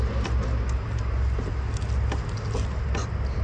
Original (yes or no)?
yes